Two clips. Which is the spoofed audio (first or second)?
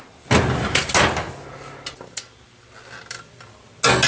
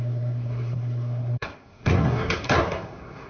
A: second